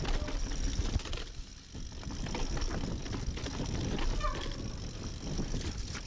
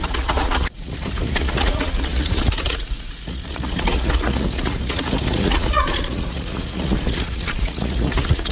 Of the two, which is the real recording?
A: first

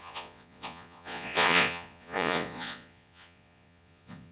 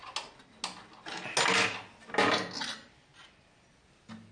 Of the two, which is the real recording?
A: second